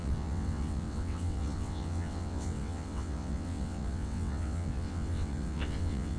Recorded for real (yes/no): no